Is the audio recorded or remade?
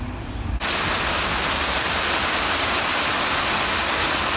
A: recorded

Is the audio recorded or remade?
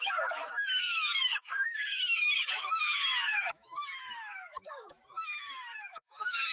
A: remade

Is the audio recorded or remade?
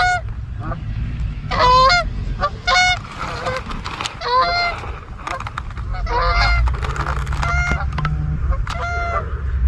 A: recorded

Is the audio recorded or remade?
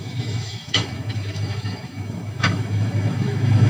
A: remade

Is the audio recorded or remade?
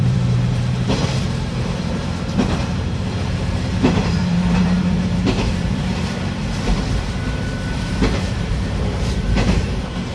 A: remade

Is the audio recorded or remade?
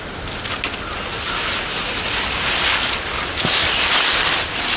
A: recorded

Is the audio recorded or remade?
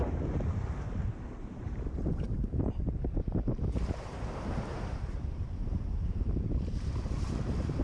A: remade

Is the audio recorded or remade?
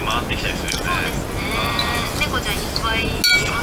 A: recorded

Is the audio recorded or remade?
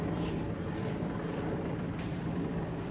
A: remade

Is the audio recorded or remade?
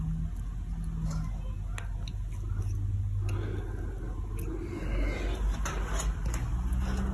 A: recorded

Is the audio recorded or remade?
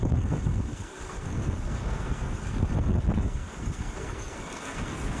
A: remade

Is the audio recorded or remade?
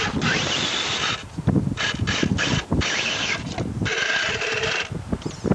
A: recorded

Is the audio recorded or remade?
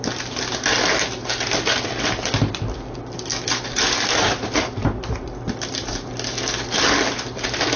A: recorded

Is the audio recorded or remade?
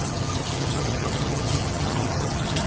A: remade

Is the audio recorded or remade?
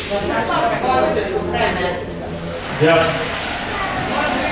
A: recorded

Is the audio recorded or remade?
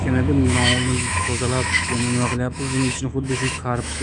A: remade